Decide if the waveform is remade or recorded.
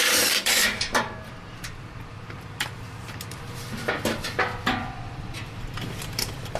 remade